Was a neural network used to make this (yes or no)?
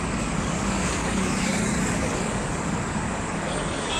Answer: yes